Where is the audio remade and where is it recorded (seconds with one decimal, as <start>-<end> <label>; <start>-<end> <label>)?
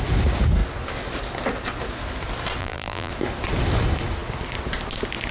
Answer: 0.0-2.6 recorded; 2.6-3.1 remade; 3.1-5.3 recorded